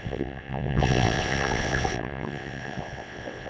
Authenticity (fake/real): fake